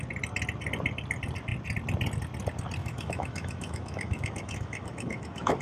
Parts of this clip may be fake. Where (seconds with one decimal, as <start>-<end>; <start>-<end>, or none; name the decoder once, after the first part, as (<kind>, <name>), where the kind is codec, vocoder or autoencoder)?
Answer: 2.8-5.6 (autoencoder, DAC-VAE)